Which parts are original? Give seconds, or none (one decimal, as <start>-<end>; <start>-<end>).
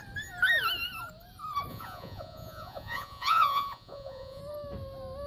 0.0-1.7; 4.4-5.3